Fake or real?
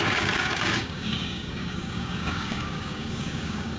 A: fake